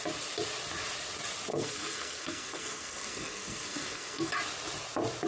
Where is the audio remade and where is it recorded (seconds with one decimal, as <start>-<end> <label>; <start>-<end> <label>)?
0.0-1.5 recorded; 1.5-4.3 remade; 4.3-5.3 recorded